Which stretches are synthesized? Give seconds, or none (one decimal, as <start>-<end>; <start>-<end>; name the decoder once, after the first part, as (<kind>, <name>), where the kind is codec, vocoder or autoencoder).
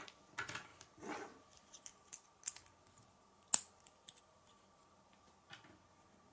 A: none